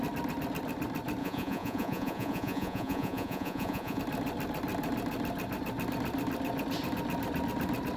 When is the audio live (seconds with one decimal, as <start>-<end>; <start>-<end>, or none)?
0.0-1.2; 4.0-8.0